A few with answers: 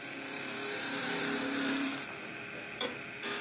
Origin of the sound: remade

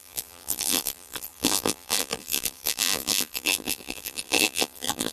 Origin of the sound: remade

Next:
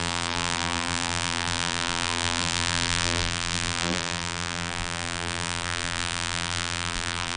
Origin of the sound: remade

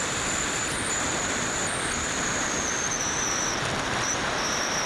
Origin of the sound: remade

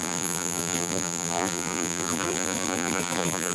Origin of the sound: remade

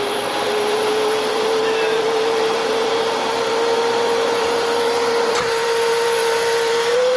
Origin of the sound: remade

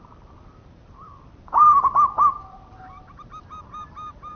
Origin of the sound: remade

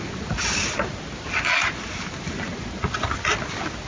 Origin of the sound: recorded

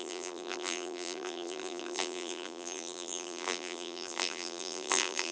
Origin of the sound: remade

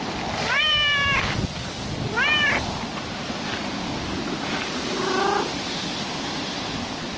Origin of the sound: recorded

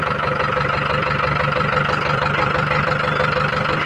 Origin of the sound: remade